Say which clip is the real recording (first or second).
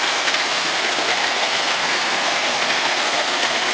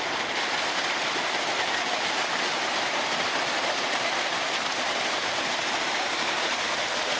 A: second